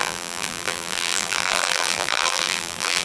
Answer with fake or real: fake